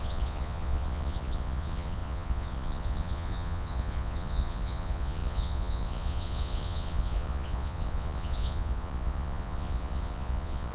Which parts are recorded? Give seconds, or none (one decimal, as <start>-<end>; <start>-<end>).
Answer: none